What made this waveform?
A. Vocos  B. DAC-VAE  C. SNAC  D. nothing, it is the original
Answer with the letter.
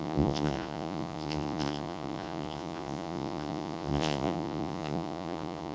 A